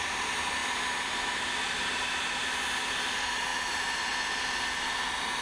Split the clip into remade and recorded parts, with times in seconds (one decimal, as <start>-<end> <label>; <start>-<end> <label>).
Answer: 0.0-5.4 recorded